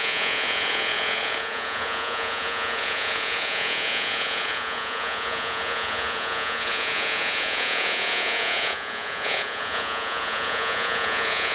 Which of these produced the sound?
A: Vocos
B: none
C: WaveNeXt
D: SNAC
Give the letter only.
A